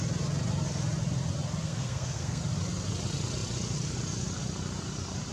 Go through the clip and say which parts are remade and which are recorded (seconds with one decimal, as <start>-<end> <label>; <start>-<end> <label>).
0.0-1.6 recorded; 1.6-2.4 remade; 2.4-5.3 recorded